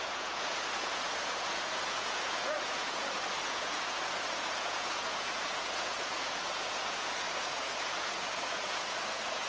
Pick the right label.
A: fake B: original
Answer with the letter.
A